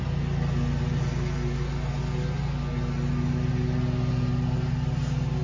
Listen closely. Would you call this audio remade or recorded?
recorded